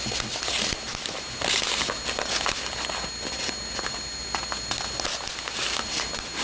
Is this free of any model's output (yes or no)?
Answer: yes